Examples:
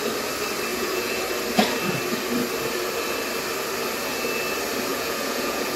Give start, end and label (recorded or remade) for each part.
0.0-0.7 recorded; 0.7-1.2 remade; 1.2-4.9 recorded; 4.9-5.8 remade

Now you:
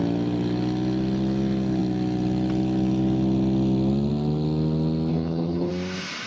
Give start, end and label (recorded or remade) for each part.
0.0-5.1 recorded; 5.1-5.7 remade; 5.7-6.3 recorded

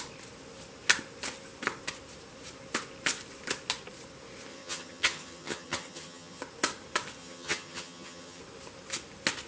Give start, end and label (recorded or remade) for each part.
0.0-4.5 recorded; 4.5-6.4 remade; 6.4-7.2 recorded; 7.2-8.4 remade; 8.4-9.5 recorded